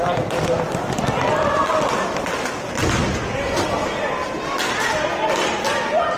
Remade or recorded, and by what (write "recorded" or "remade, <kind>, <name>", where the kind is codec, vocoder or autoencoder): recorded